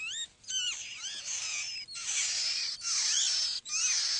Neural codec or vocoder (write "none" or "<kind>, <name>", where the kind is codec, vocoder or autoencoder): none